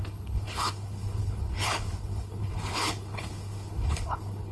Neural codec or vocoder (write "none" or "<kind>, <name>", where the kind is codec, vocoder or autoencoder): codec, HILCodec